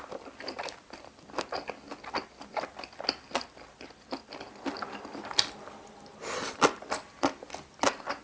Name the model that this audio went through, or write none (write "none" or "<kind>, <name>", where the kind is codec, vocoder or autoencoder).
none